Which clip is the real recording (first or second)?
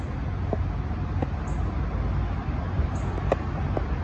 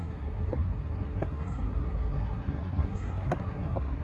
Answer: first